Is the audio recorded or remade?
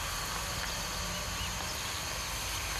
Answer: recorded